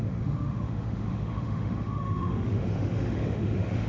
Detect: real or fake fake